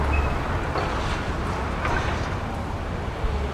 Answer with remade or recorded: recorded